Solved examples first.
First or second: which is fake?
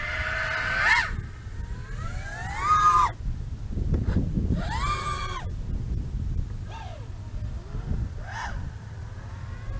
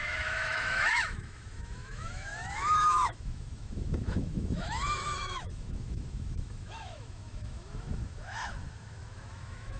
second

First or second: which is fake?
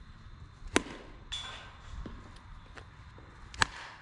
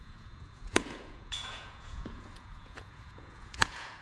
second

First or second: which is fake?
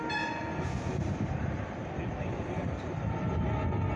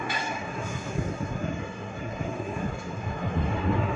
second